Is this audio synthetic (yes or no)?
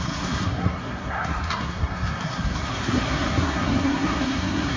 yes